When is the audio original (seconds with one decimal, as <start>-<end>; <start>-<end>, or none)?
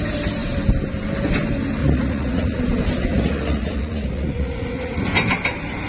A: 0.0-1.8; 2.6-3.1; 5.0-5.9